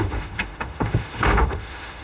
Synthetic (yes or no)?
yes